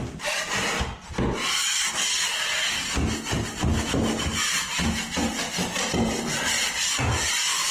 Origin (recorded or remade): recorded